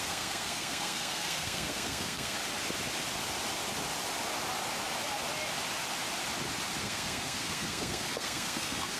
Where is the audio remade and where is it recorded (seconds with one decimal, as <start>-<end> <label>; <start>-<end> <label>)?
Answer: 0.0-2.4 remade; 2.4-6.8 recorded; 6.8-9.0 remade